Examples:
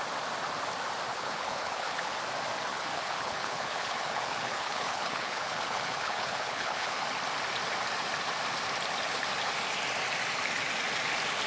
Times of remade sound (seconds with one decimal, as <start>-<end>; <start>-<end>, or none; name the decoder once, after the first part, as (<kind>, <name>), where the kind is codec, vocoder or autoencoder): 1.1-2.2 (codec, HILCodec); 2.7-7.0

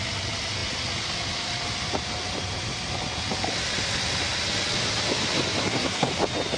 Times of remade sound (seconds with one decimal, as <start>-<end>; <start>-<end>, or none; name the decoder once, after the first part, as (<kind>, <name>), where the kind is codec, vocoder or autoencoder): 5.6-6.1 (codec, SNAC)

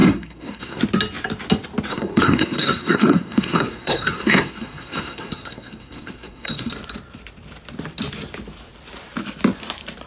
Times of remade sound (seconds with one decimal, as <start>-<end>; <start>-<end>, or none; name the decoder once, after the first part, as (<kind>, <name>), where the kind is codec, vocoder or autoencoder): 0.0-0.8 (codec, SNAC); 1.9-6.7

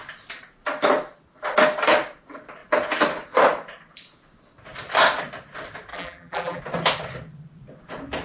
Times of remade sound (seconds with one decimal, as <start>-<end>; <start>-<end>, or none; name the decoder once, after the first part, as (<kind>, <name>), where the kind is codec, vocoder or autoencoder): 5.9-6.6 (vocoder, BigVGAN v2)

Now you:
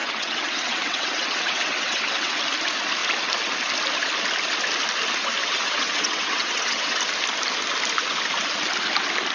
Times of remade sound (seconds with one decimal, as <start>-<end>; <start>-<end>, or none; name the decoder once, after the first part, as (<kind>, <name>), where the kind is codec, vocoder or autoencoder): 0.0-2.4 (vocoder, WaveNeXt); 5.4-7.0